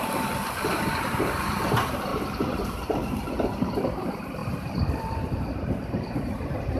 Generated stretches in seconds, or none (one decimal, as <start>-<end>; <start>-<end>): 0.0-6.8